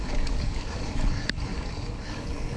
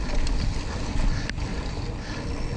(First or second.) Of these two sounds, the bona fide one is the second